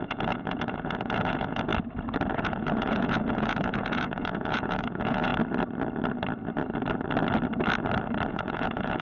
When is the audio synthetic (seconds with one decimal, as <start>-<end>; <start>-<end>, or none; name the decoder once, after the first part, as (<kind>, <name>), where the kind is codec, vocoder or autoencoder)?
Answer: 0.0-1.7 (vocoder, Vocos); 2.3-5.3; 8.3-9.0